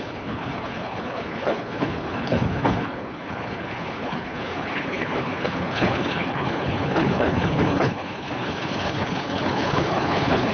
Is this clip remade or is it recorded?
remade